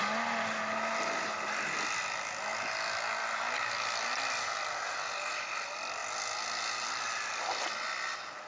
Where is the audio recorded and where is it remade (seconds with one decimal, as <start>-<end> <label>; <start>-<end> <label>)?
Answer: 0.0-8.5 recorded